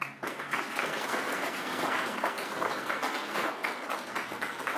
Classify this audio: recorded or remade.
remade